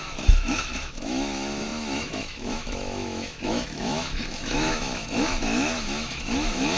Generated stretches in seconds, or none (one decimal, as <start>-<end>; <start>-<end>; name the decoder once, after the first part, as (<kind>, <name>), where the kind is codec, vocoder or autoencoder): 0.0-6.8 (autoencoder, DAC-VAE)